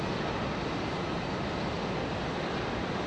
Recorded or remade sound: recorded